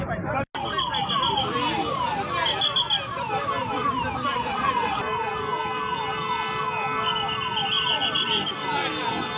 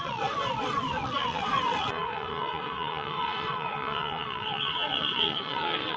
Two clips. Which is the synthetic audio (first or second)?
second